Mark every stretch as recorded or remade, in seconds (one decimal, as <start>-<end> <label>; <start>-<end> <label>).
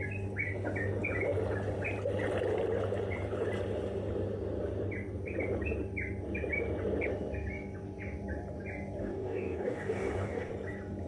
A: 0.0-9.0 recorded; 9.0-10.5 remade; 10.5-11.1 recorded